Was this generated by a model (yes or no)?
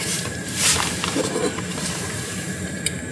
yes